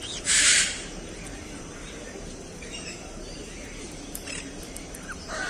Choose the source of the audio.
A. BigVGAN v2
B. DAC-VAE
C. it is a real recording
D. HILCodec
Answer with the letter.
A